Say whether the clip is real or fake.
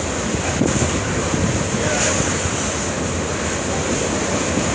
real